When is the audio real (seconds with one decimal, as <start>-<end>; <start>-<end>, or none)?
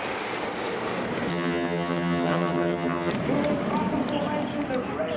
0.0-1.3; 3.1-5.2